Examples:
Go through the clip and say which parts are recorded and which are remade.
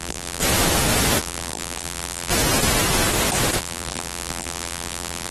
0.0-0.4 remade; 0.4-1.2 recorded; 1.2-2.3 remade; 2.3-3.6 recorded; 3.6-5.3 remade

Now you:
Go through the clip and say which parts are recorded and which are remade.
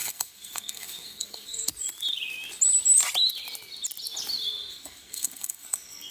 0.0-1.7 remade; 1.7-4.7 recorded; 4.7-6.1 remade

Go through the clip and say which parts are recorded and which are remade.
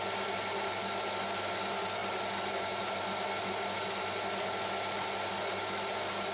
0.0-6.3 recorded